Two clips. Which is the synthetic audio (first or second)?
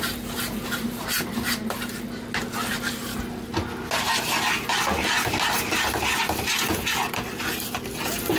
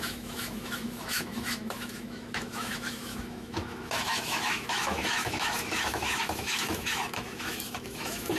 second